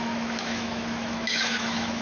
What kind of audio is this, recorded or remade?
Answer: remade